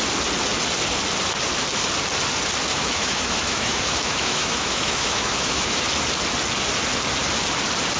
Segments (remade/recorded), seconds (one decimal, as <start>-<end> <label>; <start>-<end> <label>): 0.0-2.7 recorded; 2.7-5.8 remade; 5.8-8.0 recorded